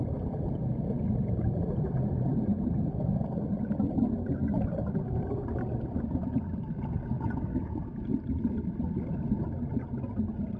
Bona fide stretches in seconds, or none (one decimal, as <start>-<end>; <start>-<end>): 0.0-10.6